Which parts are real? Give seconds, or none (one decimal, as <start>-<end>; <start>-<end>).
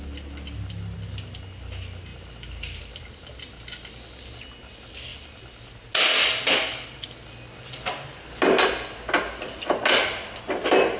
0.0-11.0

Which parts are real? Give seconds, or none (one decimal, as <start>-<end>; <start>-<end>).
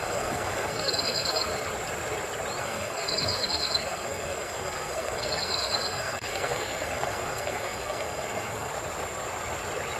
1.5-2.6; 8.7-10.0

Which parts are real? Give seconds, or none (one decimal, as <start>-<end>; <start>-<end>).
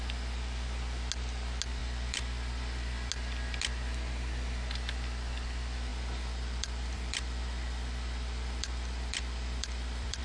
0.0-1.8; 3.1-5.9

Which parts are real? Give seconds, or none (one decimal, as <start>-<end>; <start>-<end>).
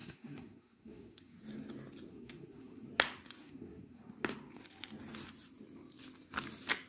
1.4-2.1; 2.9-3.4; 4.1-6.9